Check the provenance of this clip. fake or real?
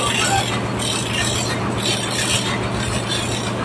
real